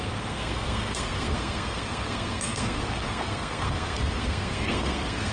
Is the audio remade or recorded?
remade